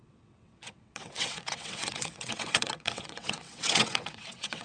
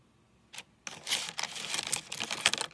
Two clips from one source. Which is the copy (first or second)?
first